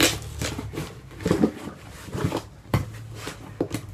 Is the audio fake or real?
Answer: real